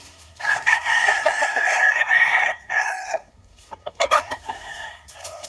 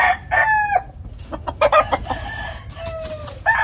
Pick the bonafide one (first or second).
second